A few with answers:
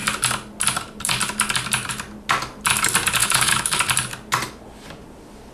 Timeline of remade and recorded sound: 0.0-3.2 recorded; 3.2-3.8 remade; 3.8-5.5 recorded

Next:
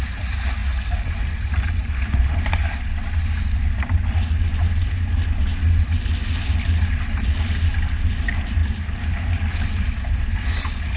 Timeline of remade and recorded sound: 0.0-11.0 recorded